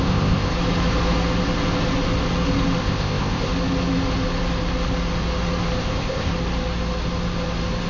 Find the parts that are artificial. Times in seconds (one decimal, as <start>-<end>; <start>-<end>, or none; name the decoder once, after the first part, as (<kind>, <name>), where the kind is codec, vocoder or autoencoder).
0.0-0.5 (codec, ZipCodec); 2.8-3.5; 5.8-6.3